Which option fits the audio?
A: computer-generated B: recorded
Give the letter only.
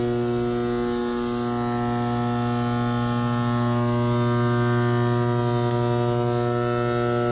B